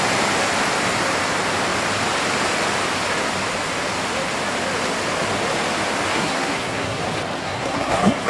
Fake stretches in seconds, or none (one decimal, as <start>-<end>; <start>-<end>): 6.1-7.0; 7.4-8.3